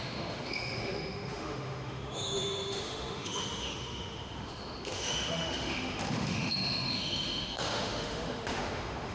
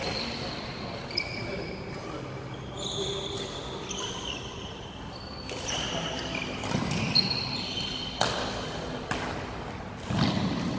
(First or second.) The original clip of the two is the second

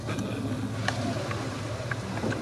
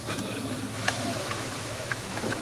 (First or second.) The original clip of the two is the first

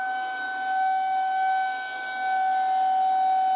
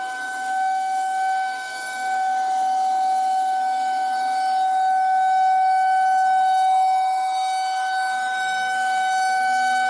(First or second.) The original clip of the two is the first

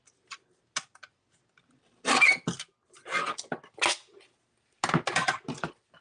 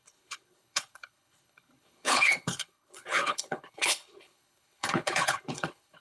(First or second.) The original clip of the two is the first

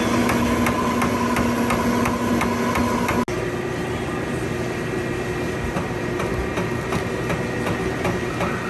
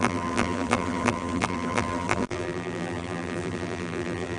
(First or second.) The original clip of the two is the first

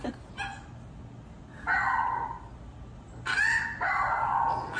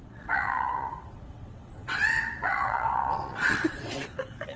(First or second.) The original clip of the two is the first